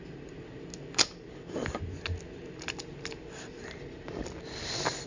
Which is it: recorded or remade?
recorded